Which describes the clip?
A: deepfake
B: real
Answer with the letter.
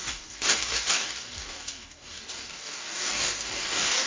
A